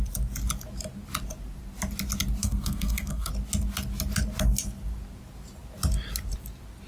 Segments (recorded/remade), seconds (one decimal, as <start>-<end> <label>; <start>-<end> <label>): 0.0-2.4 recorded; 2.4-3.3 remade; 3.3-6.9 recorded